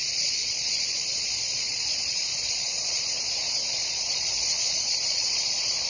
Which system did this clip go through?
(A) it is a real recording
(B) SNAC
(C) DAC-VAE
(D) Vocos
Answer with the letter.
D